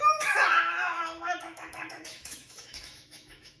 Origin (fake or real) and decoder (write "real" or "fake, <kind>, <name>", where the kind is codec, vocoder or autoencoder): fake, autoencoder, DAC-VAE